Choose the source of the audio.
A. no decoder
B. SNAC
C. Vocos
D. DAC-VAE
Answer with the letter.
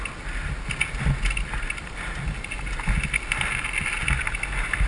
A